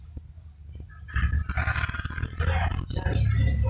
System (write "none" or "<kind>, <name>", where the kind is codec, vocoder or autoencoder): none